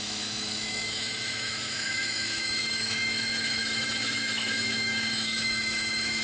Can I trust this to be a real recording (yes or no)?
no